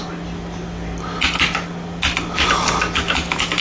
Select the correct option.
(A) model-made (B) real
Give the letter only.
B